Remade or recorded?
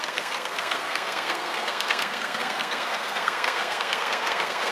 remade